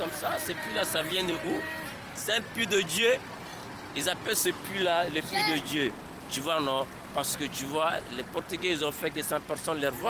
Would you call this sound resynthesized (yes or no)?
yes